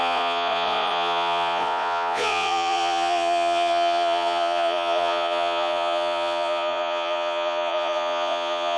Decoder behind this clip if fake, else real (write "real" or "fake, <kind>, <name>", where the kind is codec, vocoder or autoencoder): fake, vocoder, Vocos